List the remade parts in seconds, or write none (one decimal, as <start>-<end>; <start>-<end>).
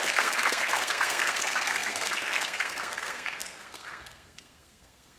0.0-5.2